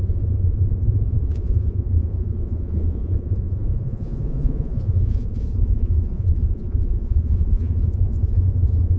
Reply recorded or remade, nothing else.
remade